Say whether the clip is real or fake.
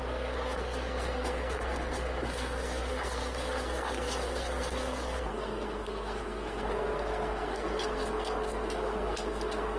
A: fake